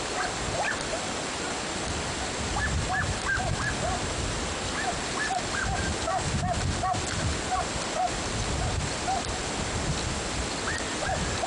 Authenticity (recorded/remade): recorded